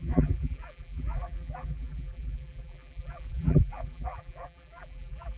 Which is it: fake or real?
fake